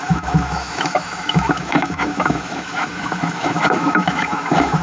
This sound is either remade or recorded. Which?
remade